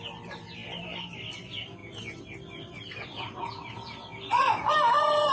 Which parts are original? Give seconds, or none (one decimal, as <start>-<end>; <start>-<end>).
0.0-5.3